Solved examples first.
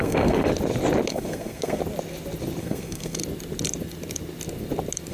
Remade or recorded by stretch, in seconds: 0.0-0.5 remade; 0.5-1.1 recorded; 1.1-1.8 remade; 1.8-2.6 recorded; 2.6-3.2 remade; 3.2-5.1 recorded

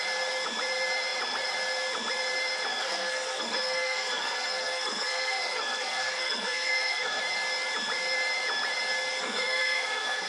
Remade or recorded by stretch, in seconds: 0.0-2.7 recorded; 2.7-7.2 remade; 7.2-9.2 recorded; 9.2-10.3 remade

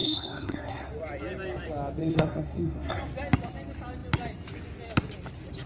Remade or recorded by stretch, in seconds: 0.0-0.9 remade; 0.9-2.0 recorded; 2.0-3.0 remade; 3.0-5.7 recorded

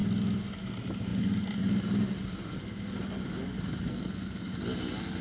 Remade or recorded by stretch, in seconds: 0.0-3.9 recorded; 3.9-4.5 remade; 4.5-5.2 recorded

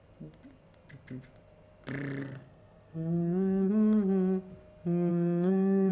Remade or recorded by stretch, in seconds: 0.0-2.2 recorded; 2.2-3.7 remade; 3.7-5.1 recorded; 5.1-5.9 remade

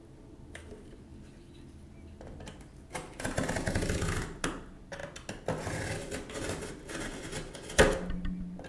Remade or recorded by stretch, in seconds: 0.0-8.7 recorded

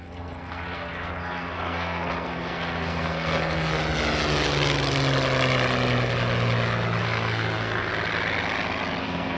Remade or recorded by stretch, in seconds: 0.0-3.8 remade; 3.8-7.0 recorded; 7.0-7.9 remade; 7.9-9.0 recorded; 9.0-9.4 remade

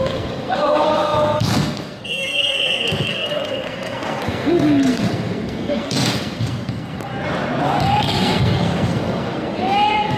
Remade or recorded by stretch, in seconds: 0.0-7.1 remade; 7.1-7.8 recorded; 7.8-10.2 remade